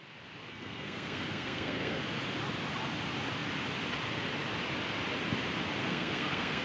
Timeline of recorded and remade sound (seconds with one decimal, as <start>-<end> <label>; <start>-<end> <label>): 0.0-0.5 recorded; 0.5-2.0 remade; 2.0-5.8 recorded; 5.8-6.6 remade